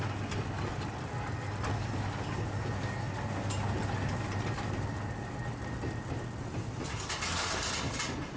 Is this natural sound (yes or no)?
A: yes